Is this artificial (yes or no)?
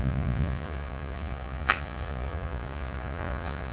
yes